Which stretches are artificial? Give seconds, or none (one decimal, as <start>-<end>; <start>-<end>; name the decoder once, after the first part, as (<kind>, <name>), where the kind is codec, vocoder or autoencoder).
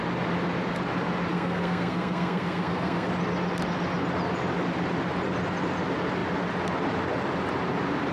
1.3-3.1 (codec, SNAC)